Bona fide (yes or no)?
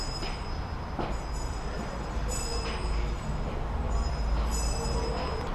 yes